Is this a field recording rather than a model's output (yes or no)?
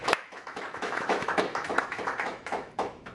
no